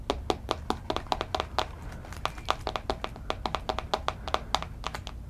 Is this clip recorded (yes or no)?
yes